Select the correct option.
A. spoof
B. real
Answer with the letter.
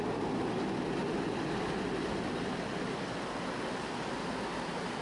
B